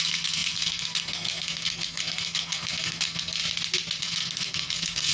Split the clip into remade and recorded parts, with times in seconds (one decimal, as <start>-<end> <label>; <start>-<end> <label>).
0.0-3.4 remade; 3.4-4.0 recorded; 4.0-5.1 remade